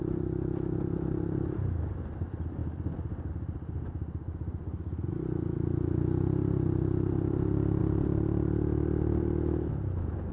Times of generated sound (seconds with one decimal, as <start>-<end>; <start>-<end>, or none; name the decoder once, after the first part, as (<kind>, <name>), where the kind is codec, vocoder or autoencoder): none